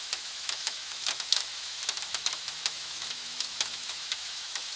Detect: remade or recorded remade